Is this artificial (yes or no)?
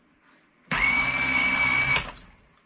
no